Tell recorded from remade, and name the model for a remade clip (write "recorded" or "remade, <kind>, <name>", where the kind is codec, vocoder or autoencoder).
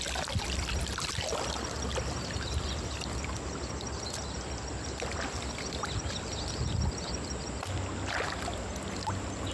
recorded